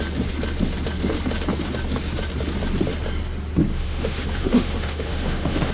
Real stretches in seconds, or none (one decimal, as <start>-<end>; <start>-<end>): 0.0-3.7